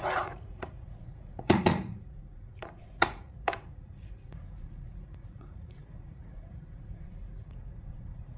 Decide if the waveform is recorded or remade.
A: remade